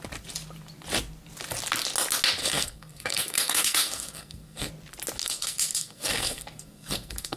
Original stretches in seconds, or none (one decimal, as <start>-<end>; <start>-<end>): 0.0-2.4; 4.7-5.2